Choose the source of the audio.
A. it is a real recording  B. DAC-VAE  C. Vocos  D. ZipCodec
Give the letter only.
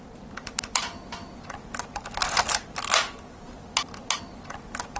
A